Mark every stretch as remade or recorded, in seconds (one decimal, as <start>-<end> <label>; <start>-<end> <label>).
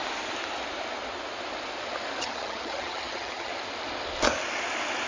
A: 0.0-2.2 recorded; 2.2-3.5 remade; 3.5-5.1 recorded